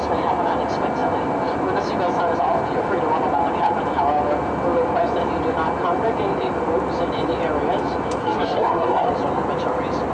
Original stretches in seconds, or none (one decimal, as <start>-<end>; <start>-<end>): 0.0-8.2; 9.1-10.1